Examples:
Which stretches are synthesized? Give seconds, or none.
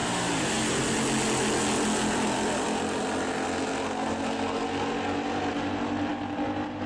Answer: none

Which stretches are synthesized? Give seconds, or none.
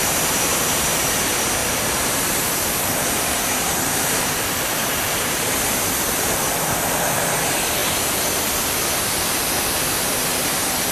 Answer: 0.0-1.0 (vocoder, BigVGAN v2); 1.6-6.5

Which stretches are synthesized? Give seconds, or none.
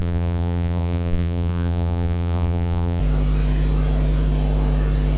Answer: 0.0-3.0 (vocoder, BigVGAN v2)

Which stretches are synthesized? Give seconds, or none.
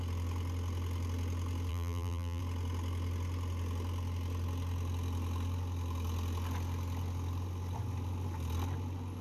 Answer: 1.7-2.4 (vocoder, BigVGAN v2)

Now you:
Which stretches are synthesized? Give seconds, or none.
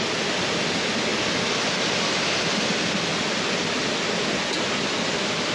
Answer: 0.0-1.1 (vocoder, BigVGAN v2); 2.3-3.1; 4.6-5.5